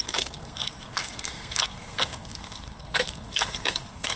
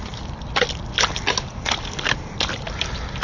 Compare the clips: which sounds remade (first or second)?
first